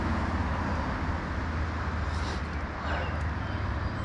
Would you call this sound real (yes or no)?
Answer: yes